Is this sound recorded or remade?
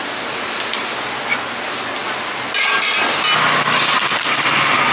recorded